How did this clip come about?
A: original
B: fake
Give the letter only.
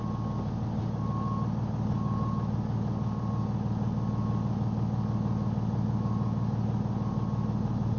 A